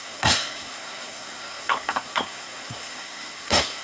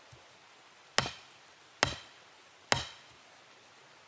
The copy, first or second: first